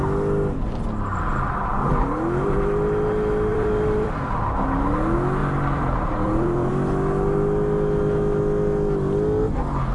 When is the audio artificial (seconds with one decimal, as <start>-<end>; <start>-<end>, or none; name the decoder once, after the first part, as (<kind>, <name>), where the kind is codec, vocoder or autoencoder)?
3.5-4.1 (vocoder, BigVGAN v2); 5.4-6.7